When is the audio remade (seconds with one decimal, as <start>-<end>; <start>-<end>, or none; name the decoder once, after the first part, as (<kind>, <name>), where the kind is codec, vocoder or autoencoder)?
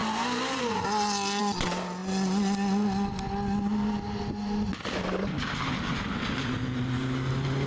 none